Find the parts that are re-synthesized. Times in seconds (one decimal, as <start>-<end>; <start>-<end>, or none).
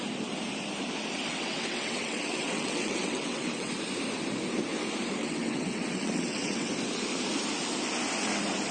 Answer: 1.3-3.7; 5.2-6.7